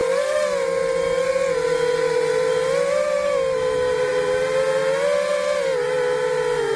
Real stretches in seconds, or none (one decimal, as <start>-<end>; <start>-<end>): 0.0-6.8